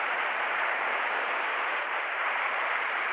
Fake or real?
fake